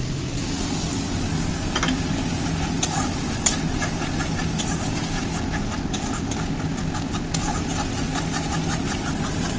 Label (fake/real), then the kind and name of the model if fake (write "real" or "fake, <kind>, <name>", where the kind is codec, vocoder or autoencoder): real